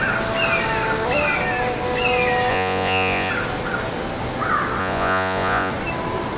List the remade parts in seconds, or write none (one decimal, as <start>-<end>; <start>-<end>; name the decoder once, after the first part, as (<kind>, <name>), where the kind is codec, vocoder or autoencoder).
2.5-3.3 (vocoder, Vocos); 4.8-5.7

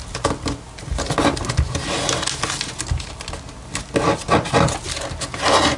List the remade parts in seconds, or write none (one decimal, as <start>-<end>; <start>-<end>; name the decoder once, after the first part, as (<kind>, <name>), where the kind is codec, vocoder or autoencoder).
none

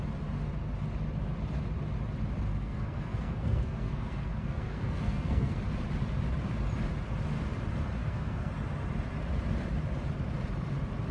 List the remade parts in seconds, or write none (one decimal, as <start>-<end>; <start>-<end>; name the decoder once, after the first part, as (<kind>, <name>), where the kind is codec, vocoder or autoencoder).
2.5-5.6 (codec, SNAC); 8.0-8.5

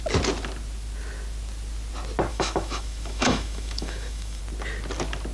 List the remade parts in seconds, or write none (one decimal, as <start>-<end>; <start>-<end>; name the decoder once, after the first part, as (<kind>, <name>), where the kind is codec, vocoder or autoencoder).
2.3-4.4 (autoencoder, DAC-VAE)

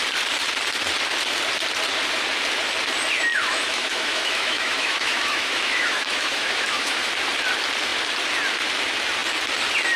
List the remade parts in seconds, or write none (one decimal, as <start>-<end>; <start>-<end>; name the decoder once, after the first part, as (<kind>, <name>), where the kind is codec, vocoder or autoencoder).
3.3-7.1 (autoencoder, DAC-VAE)

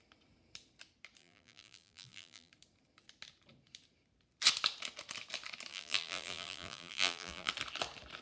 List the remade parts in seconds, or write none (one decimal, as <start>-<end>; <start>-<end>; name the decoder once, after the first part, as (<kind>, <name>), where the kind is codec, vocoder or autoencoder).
1.2-2.5 (vocoder, BigVGAN v2); 5.7-7.5

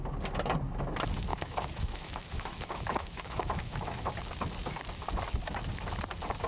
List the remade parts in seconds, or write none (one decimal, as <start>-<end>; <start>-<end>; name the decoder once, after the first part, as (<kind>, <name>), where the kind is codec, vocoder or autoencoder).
1.3-4.1 (autoencoder, DAC-VAE)

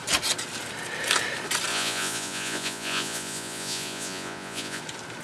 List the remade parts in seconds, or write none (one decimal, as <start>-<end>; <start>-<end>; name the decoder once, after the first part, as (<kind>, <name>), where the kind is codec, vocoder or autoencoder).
1.7-4.8 (vocoder, Vocos)